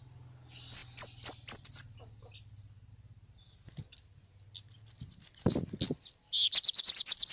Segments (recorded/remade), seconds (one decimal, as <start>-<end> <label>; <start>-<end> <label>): 0.0-7.3 recorded